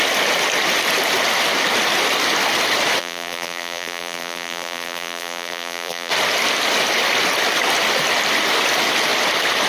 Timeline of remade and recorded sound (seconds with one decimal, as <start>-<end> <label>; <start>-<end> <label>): 0.0-3.0 recorded; 3.0-6.1 remade; 6.1-9.7 recorded